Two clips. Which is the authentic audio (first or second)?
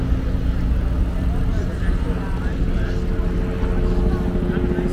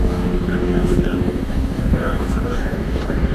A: first